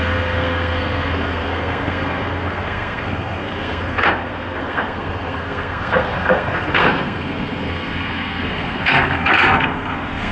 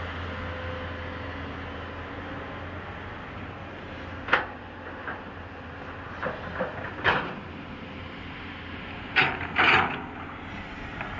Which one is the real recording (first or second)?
second